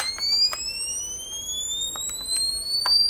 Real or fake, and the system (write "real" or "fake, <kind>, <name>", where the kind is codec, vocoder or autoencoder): fake, vocoder, BigVGAN v2